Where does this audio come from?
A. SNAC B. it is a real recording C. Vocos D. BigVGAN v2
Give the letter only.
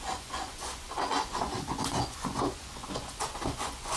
C